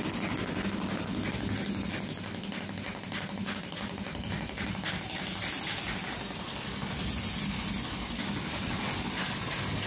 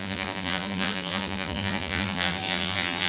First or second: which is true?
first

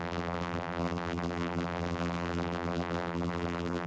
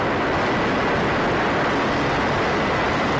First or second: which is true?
second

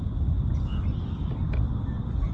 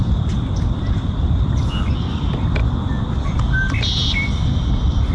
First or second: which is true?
first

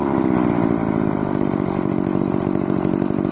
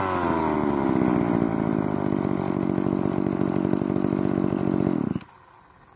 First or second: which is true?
second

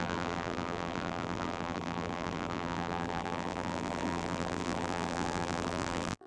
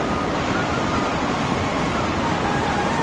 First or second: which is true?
second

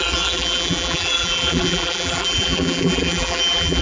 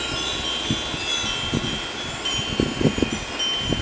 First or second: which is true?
second